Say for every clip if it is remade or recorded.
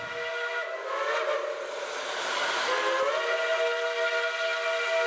recorded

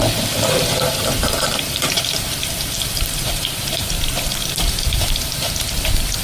remade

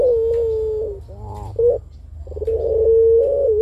recorded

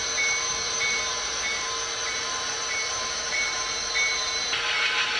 remade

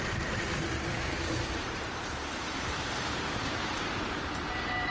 remade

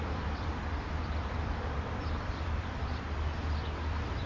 remade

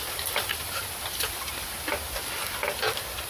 recorded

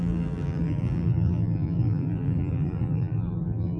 remade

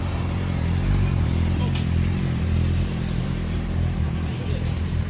remade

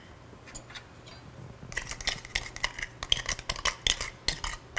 recorded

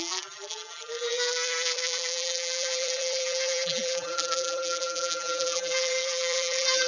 remade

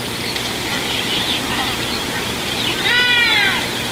recorded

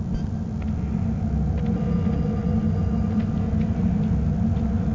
recorded